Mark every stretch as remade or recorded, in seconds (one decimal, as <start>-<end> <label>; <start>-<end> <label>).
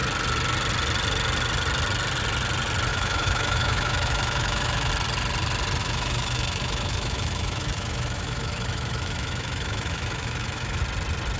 0.0-2.9 recorded; 2.9-4.9 remade; 4.9-5.8 recorded; 5.8-10.8 remade; 10.8-11.4 recorded